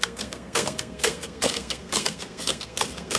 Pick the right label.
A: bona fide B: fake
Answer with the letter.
B